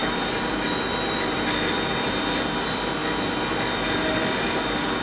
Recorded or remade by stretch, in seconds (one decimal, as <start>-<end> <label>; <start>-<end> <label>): 0.0-2.1 remade; 2.1-5.0 recorded